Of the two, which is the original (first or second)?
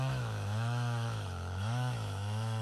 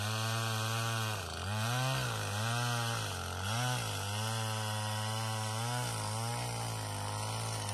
second